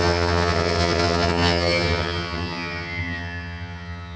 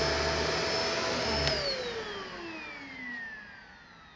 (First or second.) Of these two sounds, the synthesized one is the first